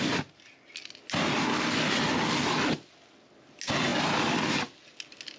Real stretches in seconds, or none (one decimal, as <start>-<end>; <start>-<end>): 0.0-5.4